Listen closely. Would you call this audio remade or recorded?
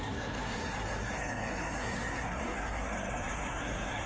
remade